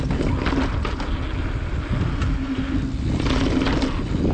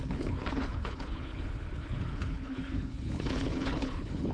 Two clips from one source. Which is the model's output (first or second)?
second